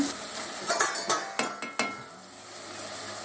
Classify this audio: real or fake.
real